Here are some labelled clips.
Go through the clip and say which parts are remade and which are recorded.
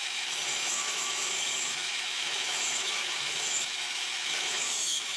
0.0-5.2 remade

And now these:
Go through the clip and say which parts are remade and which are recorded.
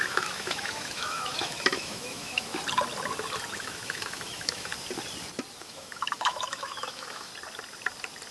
0.0-2.5 remade; 2.5-3.5 recorded; 3.5-4.7 remade; 4.7-5.6 recorded; 5.6-7.3 remade; 7.3-8.3 recorded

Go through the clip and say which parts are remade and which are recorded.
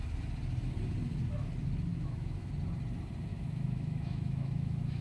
0.0-1.9 recorded; 1.9-2.5 remade; 2.5-3.3 recorded; 3.3-5.0 remade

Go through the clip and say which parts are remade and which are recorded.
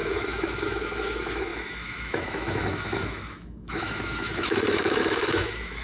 0.0-5.8 remade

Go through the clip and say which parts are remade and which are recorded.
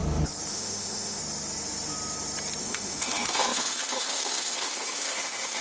0.0-0.5 recorded; 0.5-1.2 remade; 1.2-2.6 recorded; 2.6-5.6 remade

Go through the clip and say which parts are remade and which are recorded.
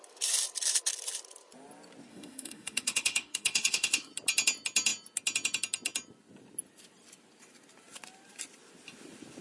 0.0-2.1 recorded; 2.1-4.1 remade; 4.1-9.4 recorded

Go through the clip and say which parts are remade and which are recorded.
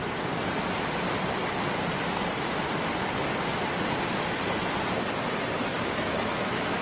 0.0-5.7 recorded; 5.7-6.8 remade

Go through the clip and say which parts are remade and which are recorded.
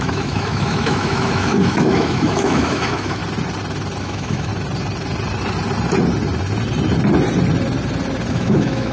0.0-3.2 remade; 3.2-4.0 recorded; 4.0-4.5 remade; 4.5-8.3 recorded; 8.3-8.9 remade